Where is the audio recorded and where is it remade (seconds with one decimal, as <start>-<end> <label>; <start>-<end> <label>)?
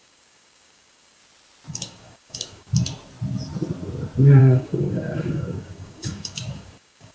0.0-1.2 remade; 1.2-1.7 recorded; 1.7-2.7 remade; 2.7-4.4 recorded; 4.4-7.1 remade